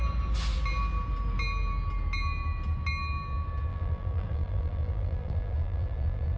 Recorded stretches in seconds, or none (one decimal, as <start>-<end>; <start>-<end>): 0.0-3.7